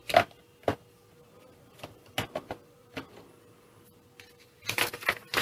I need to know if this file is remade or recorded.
recorded